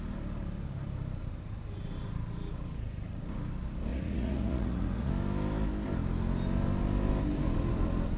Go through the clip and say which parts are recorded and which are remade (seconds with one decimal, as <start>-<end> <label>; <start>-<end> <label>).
0.0-3.9 recorded; 3.9-5.1 remade; 5.1-8.2 recorded